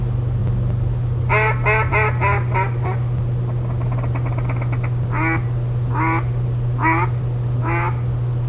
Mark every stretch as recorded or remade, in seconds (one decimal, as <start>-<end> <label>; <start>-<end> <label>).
0.0-8.5 recorded